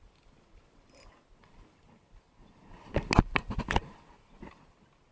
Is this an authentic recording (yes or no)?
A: yes